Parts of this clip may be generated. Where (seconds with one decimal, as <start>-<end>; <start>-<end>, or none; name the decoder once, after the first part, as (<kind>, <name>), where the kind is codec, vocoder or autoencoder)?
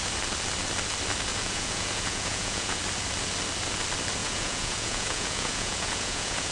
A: 1.3-2.8 (vocoder, Vocos); 4.2-6.5